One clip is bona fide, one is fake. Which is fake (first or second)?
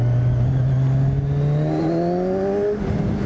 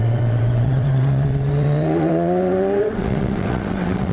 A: second